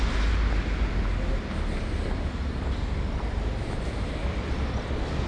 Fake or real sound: real